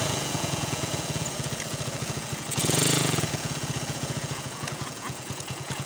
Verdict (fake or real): fake